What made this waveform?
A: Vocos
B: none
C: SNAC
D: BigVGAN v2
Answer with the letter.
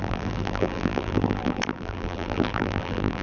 D